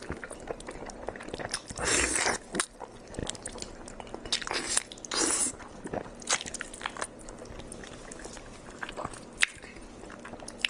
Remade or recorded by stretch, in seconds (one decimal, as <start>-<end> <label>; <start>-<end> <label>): 0.0-10.7 recorded